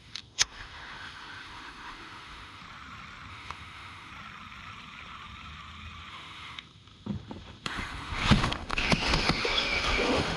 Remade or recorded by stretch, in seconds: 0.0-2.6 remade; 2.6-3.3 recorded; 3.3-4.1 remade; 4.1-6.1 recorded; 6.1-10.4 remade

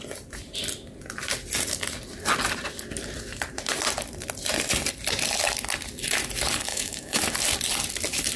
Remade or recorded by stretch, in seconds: 0.0-6.7 recorded; 6.7-7.2 remade; 7.2-8.4 recorded